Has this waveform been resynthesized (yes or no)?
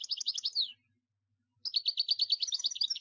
no